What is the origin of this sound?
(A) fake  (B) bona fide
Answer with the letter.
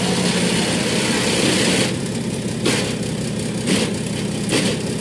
B